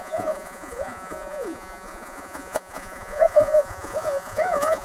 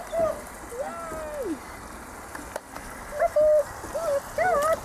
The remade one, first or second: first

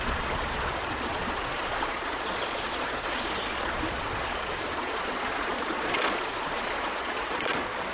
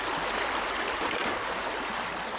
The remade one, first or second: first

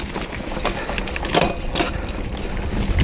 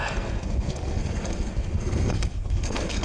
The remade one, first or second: second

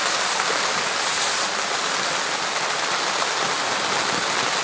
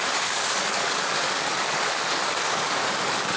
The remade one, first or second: second